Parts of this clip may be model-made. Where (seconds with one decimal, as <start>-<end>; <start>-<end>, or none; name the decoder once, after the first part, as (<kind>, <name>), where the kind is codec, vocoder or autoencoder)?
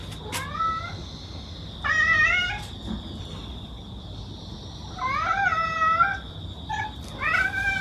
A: none